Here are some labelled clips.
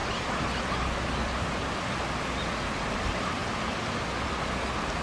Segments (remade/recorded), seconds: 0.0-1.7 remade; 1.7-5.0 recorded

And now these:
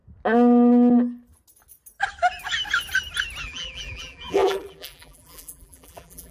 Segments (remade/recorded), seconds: 0.0-3.4 recorded; 3.4-6.3 remade